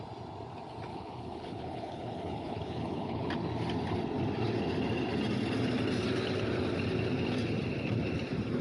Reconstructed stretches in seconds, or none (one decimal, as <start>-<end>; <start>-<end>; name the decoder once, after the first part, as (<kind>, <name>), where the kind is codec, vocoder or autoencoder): 0.9-3.3 (codec, HILCodec)